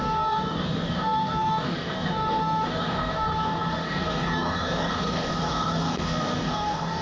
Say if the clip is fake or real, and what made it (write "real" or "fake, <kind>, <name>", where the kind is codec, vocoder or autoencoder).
fake, codec, DAC